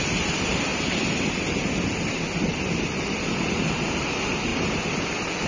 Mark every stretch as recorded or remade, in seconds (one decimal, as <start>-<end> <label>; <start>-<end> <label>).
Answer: 0.0-5.5 recorded